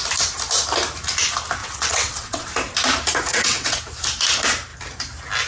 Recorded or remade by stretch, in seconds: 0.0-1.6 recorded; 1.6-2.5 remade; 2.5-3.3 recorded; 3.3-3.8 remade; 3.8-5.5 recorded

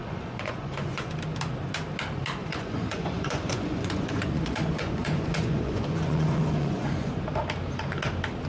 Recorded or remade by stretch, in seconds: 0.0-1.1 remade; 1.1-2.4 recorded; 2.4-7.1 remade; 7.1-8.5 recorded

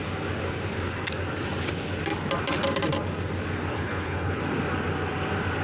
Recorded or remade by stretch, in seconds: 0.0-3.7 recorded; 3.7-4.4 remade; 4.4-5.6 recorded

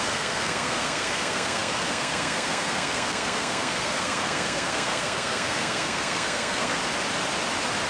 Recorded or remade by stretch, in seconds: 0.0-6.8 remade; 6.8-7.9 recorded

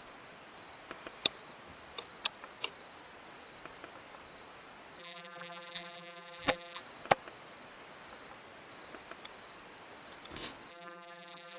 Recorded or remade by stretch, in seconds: 0.0-5.0 recorded; 5.0-6.8 remade; 6.8-10.7 recorded; 10.7-11.6 remade